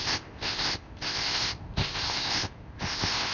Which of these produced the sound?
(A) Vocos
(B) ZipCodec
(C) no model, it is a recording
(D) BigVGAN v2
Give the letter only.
B